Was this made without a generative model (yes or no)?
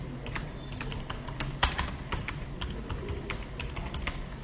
yes